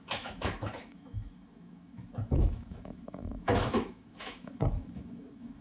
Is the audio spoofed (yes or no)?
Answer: yes